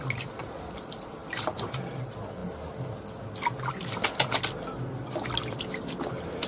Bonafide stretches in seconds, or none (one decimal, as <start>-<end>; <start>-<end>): 0.0-6.5